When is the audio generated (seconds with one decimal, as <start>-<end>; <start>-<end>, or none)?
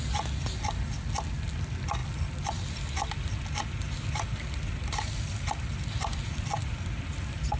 none